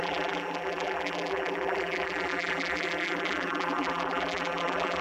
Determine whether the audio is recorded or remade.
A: remade